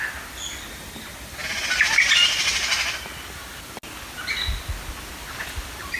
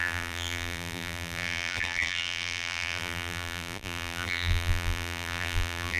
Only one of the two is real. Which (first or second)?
first